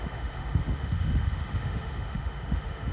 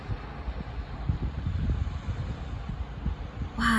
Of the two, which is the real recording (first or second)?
second